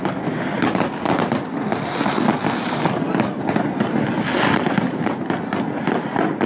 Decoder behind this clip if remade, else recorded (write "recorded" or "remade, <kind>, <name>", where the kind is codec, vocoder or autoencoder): recorded